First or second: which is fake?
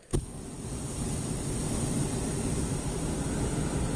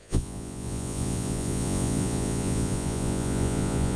second